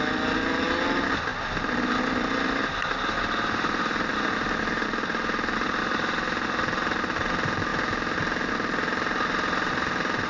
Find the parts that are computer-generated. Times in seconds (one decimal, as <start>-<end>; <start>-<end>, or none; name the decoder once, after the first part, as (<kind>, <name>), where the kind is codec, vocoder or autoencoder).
none